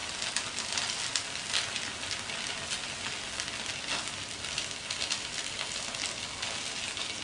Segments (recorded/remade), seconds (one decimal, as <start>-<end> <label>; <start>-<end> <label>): 0.0-7.2 recorded